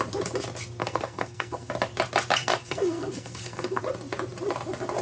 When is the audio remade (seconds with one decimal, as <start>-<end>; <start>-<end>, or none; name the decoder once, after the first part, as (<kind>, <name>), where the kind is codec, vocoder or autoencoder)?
0.8-1.7 (codec, SNAC); 2.4-3.8

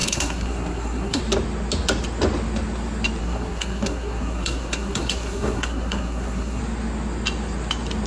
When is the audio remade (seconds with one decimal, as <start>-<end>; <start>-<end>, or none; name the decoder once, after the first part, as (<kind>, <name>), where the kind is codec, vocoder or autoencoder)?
0.0-1.2 (codec, SNAC); 3.2-6.6

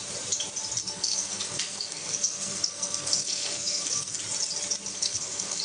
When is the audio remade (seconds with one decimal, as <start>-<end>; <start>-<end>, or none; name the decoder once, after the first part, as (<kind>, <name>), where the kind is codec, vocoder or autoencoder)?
0.8-4.2 (codec, SNAC); 4.9-5.6

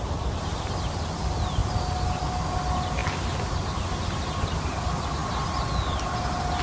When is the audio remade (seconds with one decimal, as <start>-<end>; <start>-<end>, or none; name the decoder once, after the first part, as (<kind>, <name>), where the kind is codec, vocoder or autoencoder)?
none